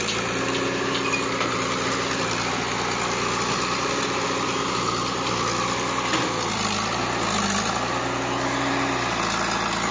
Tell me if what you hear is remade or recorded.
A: recorded